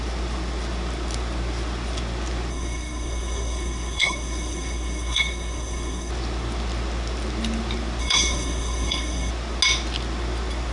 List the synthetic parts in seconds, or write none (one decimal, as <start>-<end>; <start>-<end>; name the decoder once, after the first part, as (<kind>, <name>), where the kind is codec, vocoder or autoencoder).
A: 2.5-6.1 (codec, SNAC); 8.0-9.3